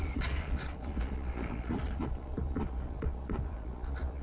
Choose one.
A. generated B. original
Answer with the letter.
A